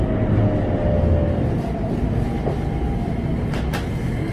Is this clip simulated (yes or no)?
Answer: no